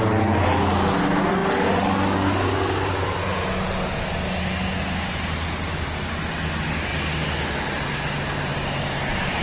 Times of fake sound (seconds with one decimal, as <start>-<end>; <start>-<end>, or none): none